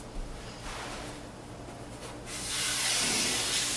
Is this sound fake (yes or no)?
no